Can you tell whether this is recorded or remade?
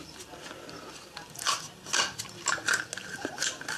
recorded